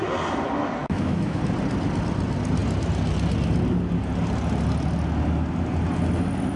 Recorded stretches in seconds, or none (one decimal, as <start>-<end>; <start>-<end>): 0.0-0.8; 1.4-6.6